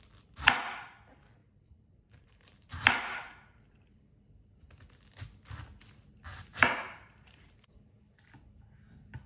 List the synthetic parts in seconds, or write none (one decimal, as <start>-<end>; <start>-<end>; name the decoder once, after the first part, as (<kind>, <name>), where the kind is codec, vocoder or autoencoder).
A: 1.4-4.0 (vocoder, BigVGAN v2); 6.3-8.0